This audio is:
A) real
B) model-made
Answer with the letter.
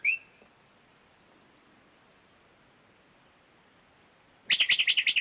A